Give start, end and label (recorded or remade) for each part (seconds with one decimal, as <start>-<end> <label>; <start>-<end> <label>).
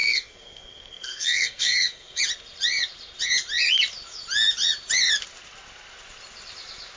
0.0-2.2 remade; 2.2-7.0 recorded